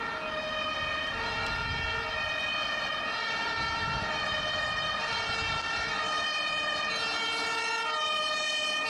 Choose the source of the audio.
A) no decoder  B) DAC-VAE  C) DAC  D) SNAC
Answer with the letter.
A